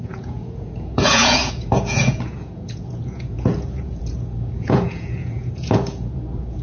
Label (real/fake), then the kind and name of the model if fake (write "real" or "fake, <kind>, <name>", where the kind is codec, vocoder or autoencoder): fake, vocoder, Vocos